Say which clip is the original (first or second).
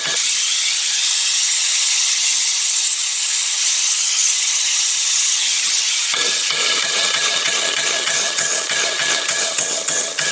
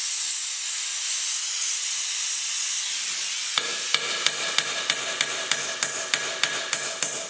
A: second